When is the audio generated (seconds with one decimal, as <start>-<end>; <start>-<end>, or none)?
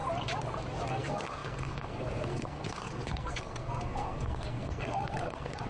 0.9-5.7